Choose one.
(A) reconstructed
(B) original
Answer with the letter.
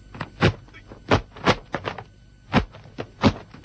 B